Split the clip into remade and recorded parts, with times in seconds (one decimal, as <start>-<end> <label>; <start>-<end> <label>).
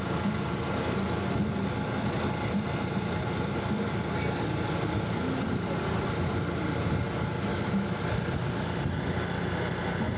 0.0-7.5 recorded; 7.5-8.0 remade; 8.0-10.2 recorded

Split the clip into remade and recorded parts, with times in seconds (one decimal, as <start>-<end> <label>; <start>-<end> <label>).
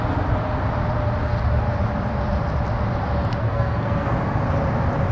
0.0-3.4 recorded; 3.4-4.1 remade; 4.1-5.1 recorded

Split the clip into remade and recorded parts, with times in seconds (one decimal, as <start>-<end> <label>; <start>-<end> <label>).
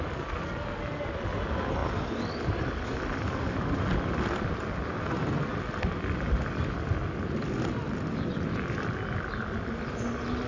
0.0-10.5 recorded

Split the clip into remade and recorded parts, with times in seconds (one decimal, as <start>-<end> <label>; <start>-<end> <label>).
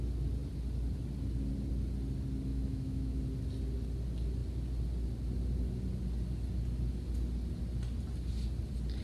0.0-2.5 recorded; 2.5-3.2 remade; 3.2-9.0 recorded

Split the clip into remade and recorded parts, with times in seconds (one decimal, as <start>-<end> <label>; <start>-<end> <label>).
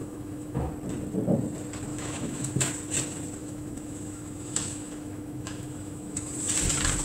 0.0-0.7 remade; 0.7-1.9 recorded; 1.9-2.7 remade; 2.7-3.4 recorded; 3.4-6.3 remade; 6.3-7.0 recorded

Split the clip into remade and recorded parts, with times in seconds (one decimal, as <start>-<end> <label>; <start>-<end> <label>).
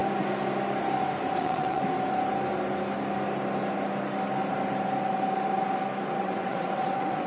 0.0-1.4 recorded; 1.4-1.8 remade; 1.8-6.2 recorded; 6.2-7.3 remade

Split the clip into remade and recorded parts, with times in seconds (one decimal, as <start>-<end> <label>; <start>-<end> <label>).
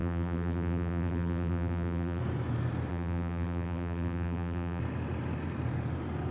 0.0-2.2 remade; 2.2-2.9 recorded; 2.9-4.8 remade; 4.8-6.3 recorded